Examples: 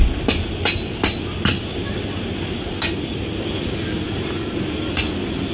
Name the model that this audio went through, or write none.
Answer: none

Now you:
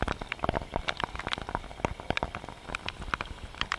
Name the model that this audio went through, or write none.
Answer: none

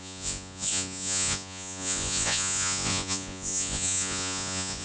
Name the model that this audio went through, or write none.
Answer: vocoder, Vocos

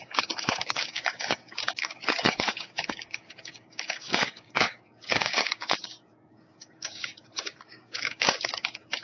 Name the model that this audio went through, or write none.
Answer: codec, DAC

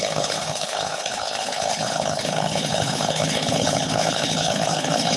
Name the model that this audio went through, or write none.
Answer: codec, HILCodec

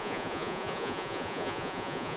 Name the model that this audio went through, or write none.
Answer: vocoder, Vocos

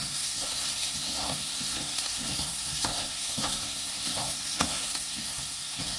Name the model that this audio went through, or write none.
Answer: codec, SNAC